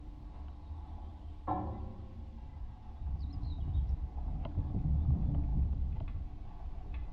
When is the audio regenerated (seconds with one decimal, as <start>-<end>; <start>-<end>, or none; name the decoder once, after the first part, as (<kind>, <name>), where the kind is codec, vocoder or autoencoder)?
2.5-3.2 (vocoder, Vocos)